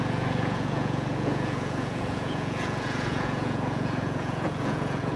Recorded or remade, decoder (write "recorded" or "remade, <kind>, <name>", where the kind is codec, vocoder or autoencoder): remade, vocoder, Vocos